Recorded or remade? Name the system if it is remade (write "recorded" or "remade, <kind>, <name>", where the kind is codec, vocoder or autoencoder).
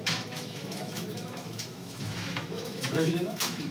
remade, autoencoder, DAC-VAE